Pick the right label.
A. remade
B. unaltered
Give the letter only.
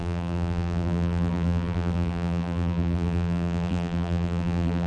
A